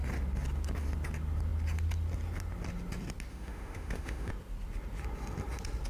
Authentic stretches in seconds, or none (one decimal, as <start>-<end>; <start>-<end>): 0.0-3.3; 4.3-5.9